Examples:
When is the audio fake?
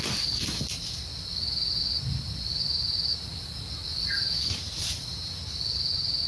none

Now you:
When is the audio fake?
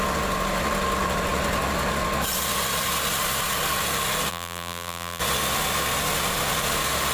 4.3-5.2 (vocoder, BigVGAN v2)